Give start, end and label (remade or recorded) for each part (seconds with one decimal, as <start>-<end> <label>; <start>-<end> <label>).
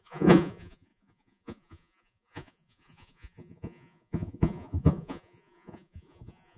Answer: 0.0-6.6 remade